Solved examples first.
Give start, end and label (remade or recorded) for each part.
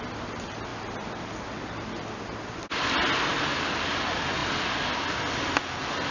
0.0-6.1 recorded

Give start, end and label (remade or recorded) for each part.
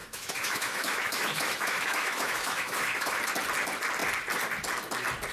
0.0-3.2 remade; 3.2-5.3 recorded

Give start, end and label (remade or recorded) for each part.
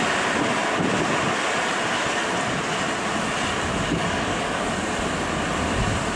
0.0-3.7 recorded; 3.7-4.6 remade; 4.6-6.2 recorded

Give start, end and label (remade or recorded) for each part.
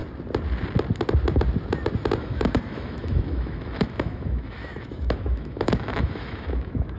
0.0-2.2 recorded; 2.2-7.0 remade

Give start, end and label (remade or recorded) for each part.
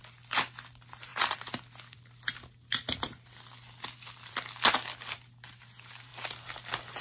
0.0-7.0 recorded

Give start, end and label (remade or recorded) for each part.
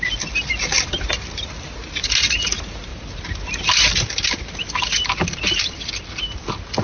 0.0-6.8 recorded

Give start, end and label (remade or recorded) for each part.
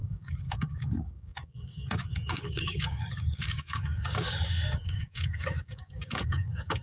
0.0-6.8 remade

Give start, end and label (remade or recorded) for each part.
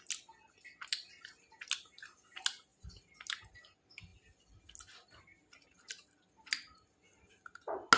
0.0-8.0 recorded